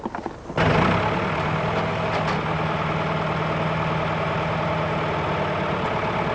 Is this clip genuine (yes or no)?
yes